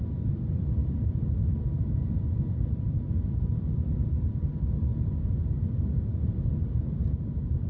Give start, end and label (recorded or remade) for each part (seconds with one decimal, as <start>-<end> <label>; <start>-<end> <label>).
0.0-7.7 recorded